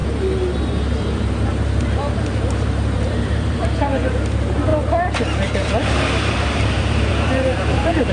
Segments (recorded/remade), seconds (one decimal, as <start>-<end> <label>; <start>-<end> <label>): 0.0-1.0 recorded; 1.0-8.1 remade